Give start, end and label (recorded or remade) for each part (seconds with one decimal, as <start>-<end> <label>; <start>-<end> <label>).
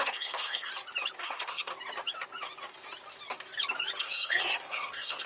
0.0-0.7 remade; 0.7-1.2 recorded; 1.2-1.7 remade; 1.7-4.0 recorded; 4.0-5.3 remade